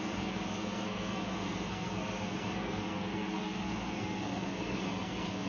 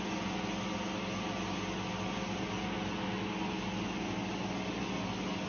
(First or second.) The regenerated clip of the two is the first